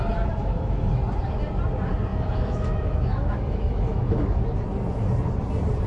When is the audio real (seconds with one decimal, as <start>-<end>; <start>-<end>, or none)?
0.0-0.4; 1.0-2.1; 4.4-5.9